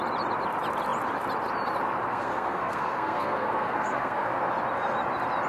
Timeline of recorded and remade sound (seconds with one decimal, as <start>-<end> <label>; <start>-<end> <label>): 0.0-2.1 recorded; 2.1-4.4 remade; 4.4-5.5 recorded